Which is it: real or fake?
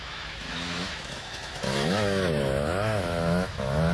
fake